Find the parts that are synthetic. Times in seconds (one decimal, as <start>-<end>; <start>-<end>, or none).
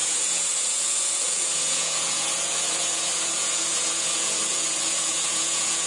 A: 0.0-5.9